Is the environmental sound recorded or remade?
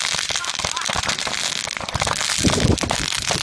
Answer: recorded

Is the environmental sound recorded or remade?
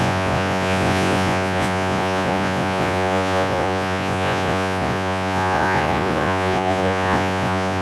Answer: remade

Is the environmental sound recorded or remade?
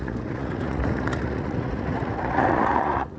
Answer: remade